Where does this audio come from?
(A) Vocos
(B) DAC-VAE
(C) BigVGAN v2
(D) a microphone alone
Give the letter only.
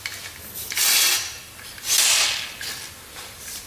D